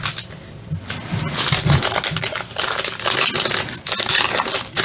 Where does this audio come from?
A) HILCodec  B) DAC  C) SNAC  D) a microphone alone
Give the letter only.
D